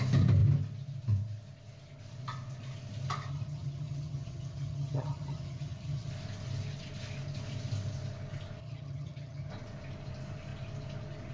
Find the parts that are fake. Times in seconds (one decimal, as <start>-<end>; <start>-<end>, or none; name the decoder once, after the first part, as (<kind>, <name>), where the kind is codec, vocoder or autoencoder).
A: 3.3-6.1 (vocoder, HiFi-GAN); 8.6-9.5